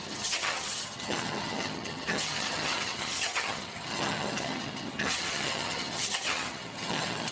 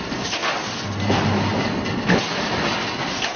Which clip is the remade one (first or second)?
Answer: first